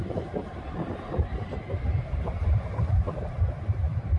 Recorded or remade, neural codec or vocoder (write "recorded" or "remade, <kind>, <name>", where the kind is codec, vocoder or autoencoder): remade, vocoder, BigVGAN v2